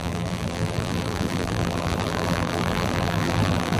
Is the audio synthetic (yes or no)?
yes